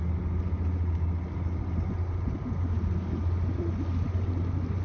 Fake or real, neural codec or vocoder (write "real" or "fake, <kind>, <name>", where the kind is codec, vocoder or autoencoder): real